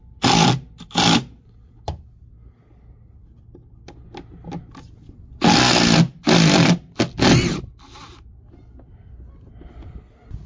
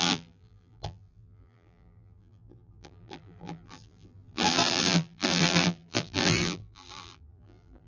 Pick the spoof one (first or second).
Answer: second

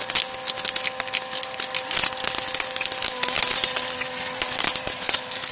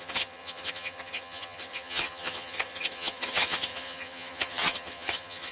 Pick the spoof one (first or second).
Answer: second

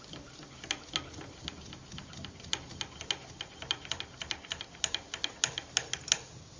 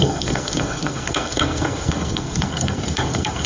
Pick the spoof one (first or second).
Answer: second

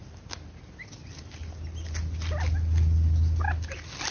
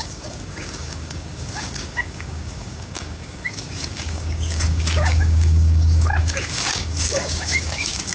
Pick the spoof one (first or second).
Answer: second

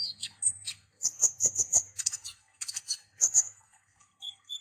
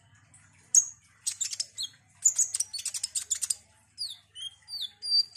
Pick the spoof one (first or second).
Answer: first